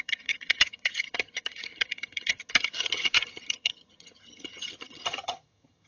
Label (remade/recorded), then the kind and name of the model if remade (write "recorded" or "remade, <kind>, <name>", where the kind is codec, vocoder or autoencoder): remade, vocoder, HiFi-GAN